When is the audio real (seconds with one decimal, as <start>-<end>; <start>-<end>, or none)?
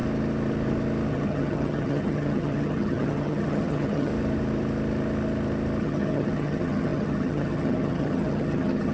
0.0-1.1; 4.1-5.8